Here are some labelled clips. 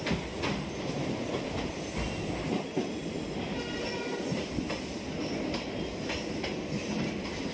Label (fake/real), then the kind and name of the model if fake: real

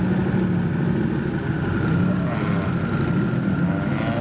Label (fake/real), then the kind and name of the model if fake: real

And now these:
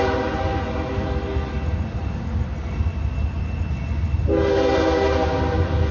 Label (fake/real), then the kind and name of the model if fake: real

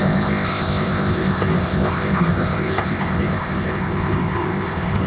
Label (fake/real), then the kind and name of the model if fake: fake, codec, ZipCodec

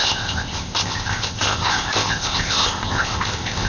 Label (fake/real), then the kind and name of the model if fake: fake, codec, ZipCodec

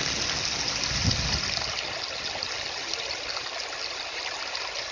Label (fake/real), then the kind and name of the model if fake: real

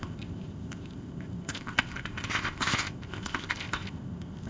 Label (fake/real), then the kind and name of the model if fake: fake, codec, ZipCodec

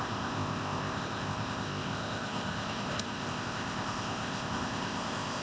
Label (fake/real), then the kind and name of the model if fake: fake, codec, ZipCodec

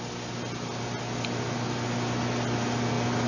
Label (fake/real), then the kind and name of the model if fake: real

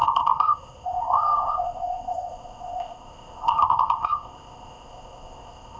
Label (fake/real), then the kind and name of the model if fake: fake, codec, ZipCodec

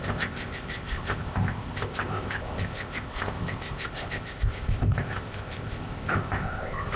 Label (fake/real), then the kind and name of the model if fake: fake, codec, ZipCodec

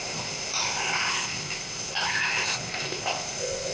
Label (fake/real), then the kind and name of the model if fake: fake, codec, ZipCodec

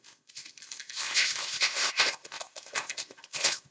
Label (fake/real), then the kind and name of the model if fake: fake, codec, ZipCodec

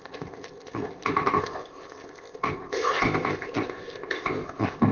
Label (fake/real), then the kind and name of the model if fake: fake, codec, ZipCodec